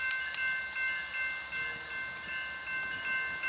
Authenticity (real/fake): real